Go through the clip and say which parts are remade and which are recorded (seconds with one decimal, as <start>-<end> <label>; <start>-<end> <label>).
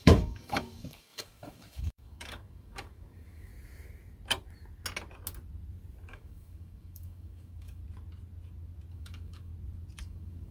0.0-3.5 remade; 3.5-6.1 recorded; 6.1-7.8 remade; 7.8-8.9 recorded; 8.9-9.5 remade; 9.5-10.0 recorded; 10.0-10.5 remade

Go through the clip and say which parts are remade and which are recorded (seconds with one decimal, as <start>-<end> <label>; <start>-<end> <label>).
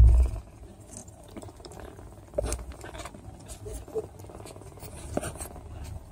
0.0-1.0 recorded; 1.0-2.0 remade; 2.0-6.1 recorded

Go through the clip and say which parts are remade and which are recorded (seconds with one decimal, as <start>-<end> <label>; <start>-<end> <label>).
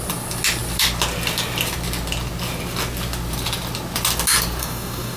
0.0-4.6 recorded; 4.6-5.2 remade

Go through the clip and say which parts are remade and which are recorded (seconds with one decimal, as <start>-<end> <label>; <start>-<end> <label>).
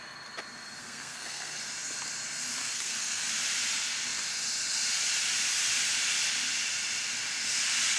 0.0-0.8 recorded; 0.8-1.6 remade; 1.6-2.6 recorded; 2.6-3.3 remade; 3.3-8.0 recorded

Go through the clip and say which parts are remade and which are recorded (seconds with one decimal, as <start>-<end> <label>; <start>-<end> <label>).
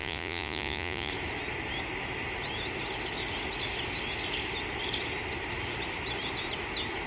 0.0-1.1 remade; 1.1-7.1 recorded